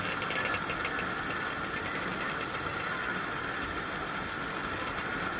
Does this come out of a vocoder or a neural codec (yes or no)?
no